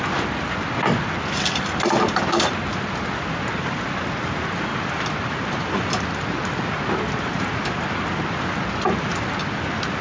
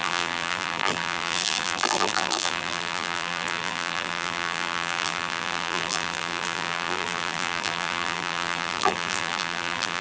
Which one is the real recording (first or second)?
first